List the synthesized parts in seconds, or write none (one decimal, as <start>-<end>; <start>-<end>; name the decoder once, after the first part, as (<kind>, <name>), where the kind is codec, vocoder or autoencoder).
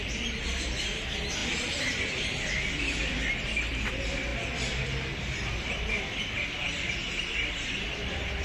none